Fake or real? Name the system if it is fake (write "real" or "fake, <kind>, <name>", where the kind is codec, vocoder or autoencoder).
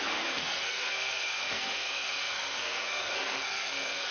fake, codec, SNAC